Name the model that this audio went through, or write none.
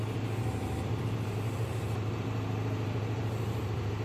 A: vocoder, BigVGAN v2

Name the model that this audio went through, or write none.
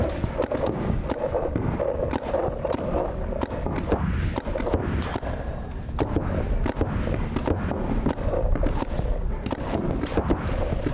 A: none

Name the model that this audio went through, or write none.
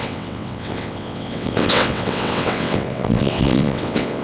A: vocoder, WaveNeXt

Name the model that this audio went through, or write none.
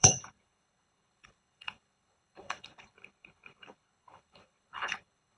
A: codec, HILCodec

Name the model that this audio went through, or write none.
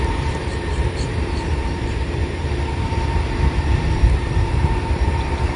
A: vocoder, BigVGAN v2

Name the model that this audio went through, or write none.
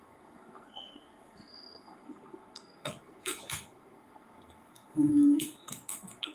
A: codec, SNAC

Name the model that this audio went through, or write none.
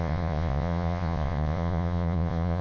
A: vocoder, Vocos